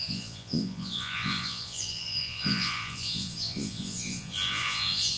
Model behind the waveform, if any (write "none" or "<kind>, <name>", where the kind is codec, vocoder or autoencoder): vocoder, Vocos